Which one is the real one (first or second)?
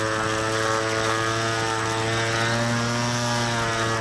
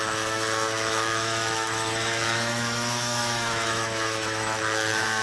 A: first